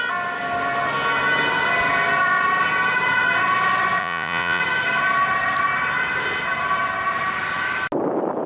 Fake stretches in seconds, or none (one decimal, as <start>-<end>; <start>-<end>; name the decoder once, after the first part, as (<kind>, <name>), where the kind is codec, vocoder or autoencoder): 4.0-4.6 (vocoder, Vocos)